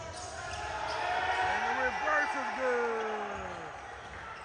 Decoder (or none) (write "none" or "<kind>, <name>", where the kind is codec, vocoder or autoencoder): none